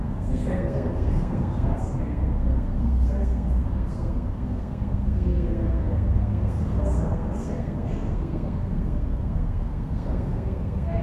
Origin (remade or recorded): remade